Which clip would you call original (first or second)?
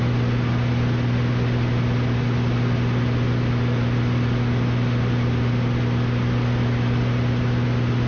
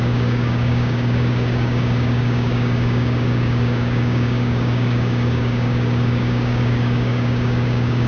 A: first